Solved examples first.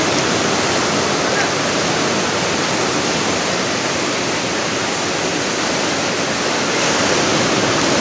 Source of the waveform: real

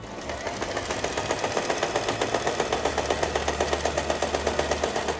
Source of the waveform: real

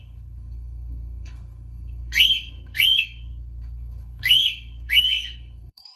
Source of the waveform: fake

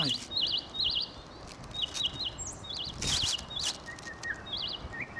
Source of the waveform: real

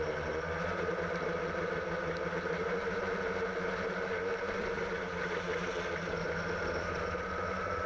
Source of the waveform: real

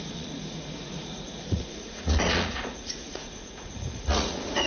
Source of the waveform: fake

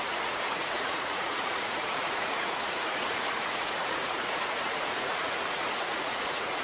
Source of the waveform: fake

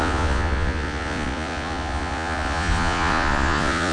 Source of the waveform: fake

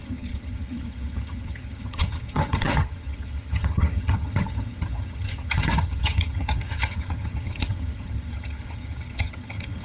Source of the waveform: fake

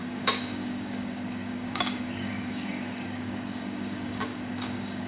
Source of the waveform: fake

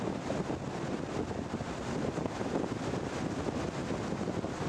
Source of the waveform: real